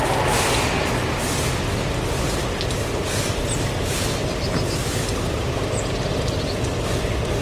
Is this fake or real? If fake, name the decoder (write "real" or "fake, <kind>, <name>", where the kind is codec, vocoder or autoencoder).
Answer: real